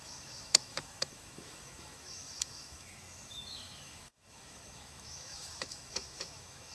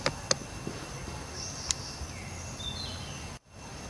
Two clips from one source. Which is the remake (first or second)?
first